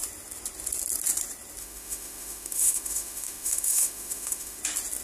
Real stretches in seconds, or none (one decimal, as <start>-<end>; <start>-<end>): 0.0-1.6; 4.6-5.0